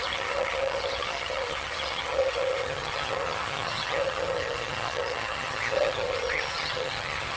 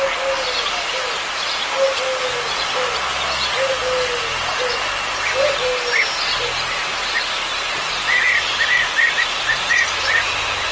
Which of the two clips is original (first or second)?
second